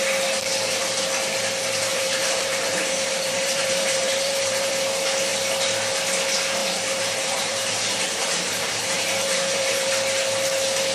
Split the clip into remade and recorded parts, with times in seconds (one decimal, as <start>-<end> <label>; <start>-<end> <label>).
0.0-1.9 recorded; 1.9-4.7 remade; 4.7-6.6 recorded; 6.6-9.9 remade; 9.9-10.9 recorded